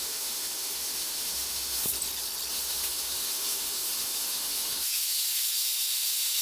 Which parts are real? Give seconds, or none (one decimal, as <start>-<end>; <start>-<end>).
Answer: 1.9-2.5